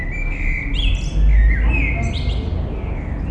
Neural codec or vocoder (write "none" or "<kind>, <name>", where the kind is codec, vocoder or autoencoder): none